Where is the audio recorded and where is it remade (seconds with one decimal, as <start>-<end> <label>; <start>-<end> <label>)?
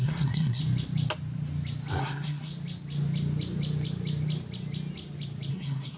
0.0-0.6 remade; 0.6-2.0 recorded; 2.0-2.5 remade; 2.5-5.5 recorded; 5.5-6.0 remade